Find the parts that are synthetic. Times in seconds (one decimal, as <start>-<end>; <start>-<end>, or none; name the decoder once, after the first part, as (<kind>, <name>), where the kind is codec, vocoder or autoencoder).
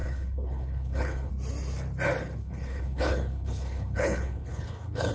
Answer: 0.0-1.3 (codec, HILCodec); 2.4-5.1